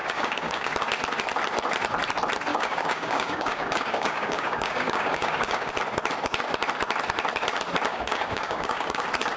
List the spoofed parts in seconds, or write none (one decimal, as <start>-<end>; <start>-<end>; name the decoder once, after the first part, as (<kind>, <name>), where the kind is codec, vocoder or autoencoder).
0.0-0.7 (codec, DAC); 2.5-5.7; 7.9-9.0